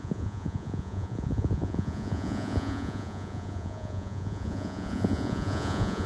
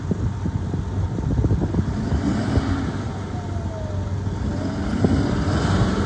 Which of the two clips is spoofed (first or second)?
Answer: first